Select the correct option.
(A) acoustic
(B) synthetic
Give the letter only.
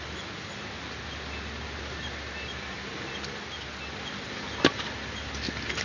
A